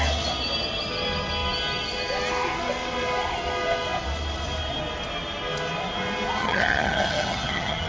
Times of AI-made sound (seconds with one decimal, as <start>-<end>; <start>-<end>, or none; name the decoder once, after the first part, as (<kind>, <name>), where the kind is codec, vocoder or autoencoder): 6.4-7.9 (vocoder, HiFi-GAN)